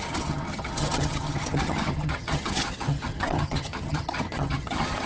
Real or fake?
fake